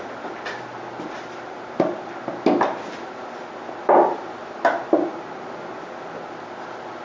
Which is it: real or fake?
real